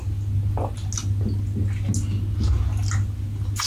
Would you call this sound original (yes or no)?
yes